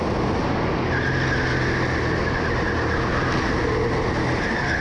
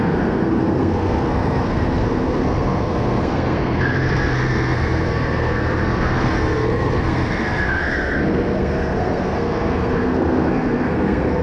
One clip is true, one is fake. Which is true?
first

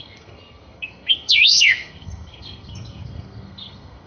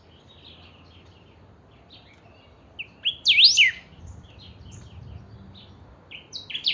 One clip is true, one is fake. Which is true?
second